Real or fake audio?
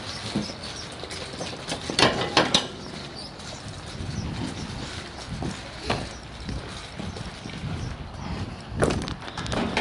real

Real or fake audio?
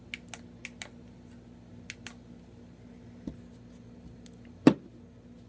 real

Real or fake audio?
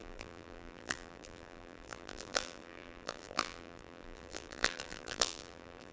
fake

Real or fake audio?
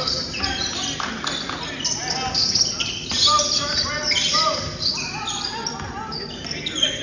real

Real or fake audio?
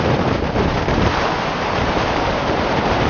fake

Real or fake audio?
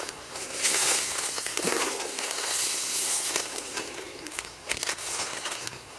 fake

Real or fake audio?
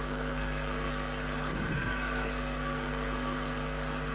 fake